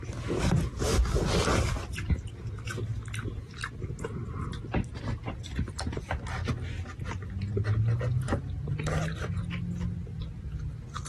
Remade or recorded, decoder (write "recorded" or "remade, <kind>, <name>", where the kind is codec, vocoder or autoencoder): recorded